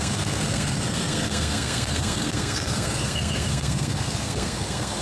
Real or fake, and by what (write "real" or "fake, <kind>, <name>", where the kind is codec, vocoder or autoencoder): fake, codec, SNAC